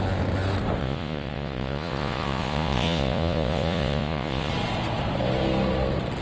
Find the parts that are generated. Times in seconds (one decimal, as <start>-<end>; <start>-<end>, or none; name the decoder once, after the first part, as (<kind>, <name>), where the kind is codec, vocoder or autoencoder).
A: 0.8-4.5 (vocoder, Vocos)